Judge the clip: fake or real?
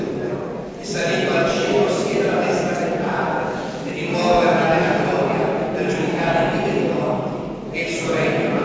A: real